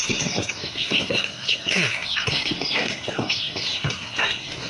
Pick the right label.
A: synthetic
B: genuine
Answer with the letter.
A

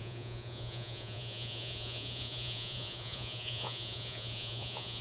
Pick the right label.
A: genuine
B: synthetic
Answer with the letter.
B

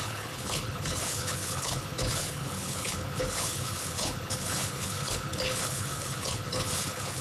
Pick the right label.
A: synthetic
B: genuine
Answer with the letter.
A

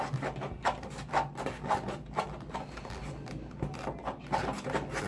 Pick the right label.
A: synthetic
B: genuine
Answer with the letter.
B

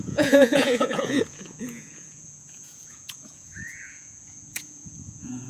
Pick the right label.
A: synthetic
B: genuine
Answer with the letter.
A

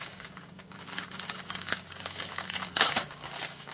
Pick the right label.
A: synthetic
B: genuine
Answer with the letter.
A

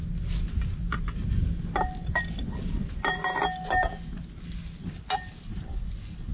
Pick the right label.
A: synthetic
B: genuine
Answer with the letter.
B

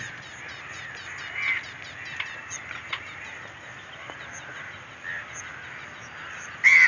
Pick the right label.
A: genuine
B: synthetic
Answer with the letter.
A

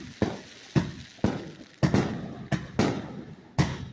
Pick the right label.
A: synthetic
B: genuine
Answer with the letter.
B